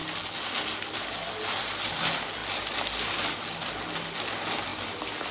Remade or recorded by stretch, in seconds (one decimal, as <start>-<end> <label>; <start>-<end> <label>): 0.0-5.3 recorded

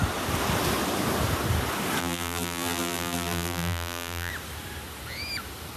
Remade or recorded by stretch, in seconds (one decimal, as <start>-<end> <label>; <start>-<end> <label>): 0.0-2.0 recorded; 2.0-4.3 remade; 4.3-5.8 recorded

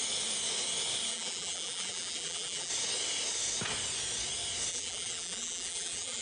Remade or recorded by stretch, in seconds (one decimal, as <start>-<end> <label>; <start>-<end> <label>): 0.0-1.1 recorded; 1.1-2.7 remade; 2.7-4.7 recorded; 4.7-6.2 remade